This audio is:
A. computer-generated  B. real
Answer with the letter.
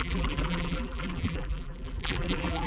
A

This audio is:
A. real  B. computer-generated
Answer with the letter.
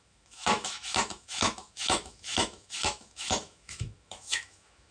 B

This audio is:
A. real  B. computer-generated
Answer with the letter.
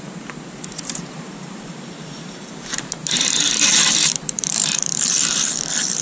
B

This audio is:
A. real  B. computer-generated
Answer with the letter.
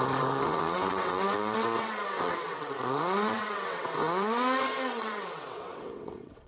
B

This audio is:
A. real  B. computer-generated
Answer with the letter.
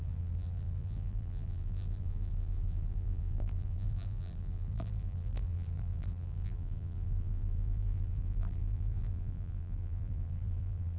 B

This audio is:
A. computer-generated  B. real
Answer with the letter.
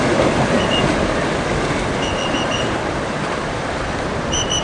A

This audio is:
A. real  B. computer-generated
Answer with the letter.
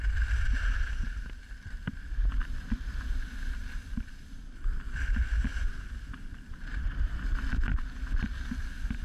A